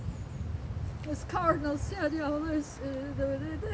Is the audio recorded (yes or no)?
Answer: yes